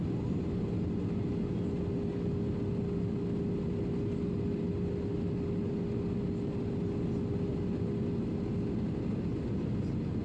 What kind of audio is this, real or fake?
real